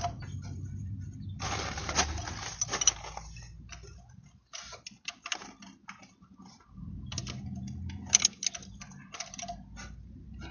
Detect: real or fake real